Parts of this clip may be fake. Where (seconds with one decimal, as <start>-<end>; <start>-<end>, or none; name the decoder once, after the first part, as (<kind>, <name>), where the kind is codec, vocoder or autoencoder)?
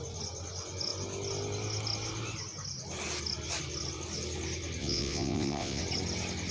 4.8-5.8 (vocoder, WaveNeXt)